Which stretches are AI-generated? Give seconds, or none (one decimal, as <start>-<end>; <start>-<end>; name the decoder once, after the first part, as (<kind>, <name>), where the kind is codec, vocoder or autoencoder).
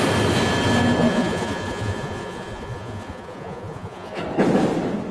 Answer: 1.1-4.2 (vocoder, Vocos)